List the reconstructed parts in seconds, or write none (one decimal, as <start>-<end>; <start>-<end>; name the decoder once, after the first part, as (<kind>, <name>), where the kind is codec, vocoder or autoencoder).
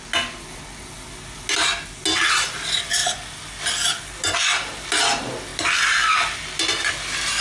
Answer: none